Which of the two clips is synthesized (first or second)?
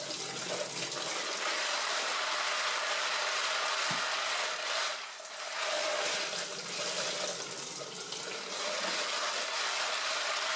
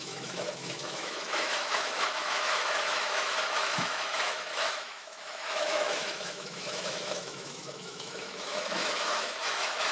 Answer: second